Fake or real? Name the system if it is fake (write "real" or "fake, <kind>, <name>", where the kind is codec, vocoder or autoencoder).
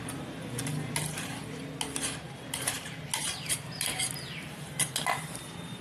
real